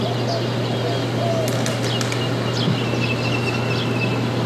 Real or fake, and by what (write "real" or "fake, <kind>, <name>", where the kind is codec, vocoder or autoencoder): real